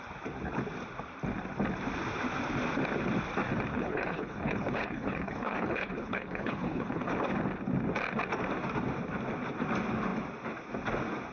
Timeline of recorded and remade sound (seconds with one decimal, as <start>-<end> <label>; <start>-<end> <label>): 0.0-3.7 recorded; 3.7-7.1 remade; 7.1-11.3 recorded